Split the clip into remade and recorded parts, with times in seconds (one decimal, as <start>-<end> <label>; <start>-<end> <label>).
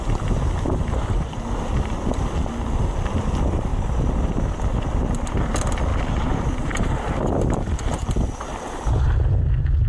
0.0-5.9 recorded; 5.9-9.4 remade; 9.4-9.9 recorded